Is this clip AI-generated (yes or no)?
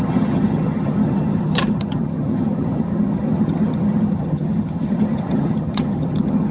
yes